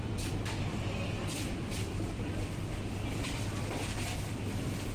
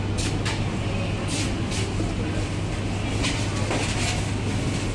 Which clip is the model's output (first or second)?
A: first